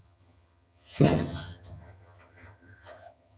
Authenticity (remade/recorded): remade